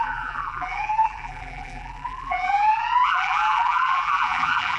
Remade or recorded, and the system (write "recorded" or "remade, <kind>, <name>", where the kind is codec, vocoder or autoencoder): remade, vocoder, BigVGAN v2